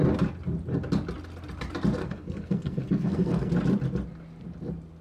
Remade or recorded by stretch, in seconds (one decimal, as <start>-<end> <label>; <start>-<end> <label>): 0.0-2.0 recorded; 2.0-3.5 remade; 3.5-5.0 recorded